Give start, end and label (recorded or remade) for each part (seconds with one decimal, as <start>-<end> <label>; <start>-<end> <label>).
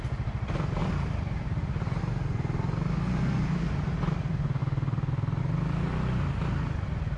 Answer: 0.0-0.8 recorded; 0.8-2.0 remade; 2.0-7.2 recorded